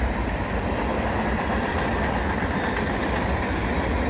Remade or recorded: remade